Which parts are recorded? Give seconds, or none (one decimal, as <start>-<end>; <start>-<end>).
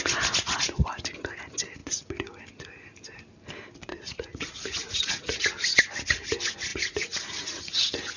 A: 0.0-3.9; 5.4-6.7; 7.6-8.2